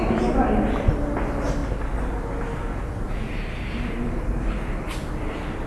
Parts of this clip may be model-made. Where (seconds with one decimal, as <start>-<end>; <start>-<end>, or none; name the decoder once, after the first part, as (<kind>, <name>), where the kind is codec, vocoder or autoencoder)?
none